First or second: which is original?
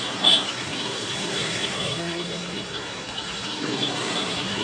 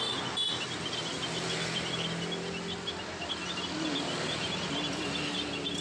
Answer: second